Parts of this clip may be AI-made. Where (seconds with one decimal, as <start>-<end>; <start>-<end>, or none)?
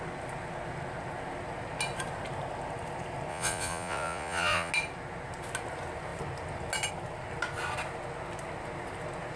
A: 3.3-4.7